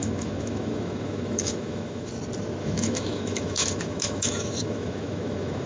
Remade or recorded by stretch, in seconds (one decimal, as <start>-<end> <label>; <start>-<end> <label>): 0.0-2.1 remade; 2.1-2.6 recorded; 2.6-5.7 remade